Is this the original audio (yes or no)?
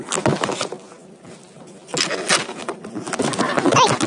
yes